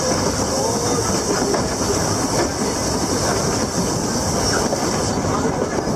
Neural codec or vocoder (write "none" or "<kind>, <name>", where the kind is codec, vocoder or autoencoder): none